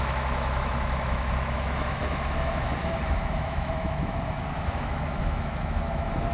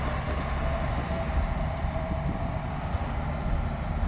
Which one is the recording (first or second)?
second